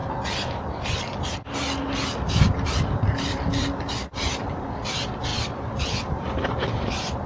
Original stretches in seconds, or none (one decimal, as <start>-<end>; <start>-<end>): 0.0-2.8